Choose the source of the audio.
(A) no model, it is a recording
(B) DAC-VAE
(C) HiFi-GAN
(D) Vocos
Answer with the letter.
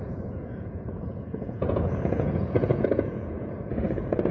D